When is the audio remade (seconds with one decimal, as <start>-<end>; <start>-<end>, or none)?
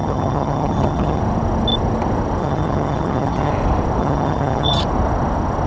0.0-1.2; 2.4-3.5; 4.0-4.8